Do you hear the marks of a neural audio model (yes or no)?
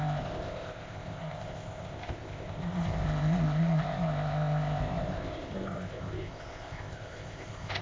yes